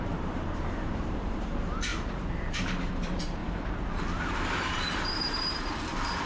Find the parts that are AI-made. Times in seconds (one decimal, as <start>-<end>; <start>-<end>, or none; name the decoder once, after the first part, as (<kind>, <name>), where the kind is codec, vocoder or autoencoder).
0.0-3.4 (vocoder, BigVGAN v2); 4.2-6.3